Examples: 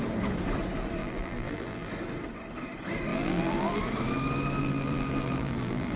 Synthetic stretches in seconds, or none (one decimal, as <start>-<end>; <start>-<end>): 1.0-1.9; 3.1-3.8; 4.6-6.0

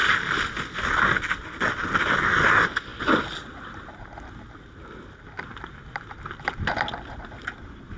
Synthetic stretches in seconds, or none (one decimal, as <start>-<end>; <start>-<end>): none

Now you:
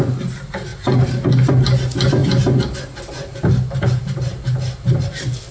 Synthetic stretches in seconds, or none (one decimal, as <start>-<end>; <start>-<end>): none